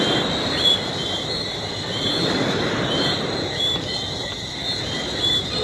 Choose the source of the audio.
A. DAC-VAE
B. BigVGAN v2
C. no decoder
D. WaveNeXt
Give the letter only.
B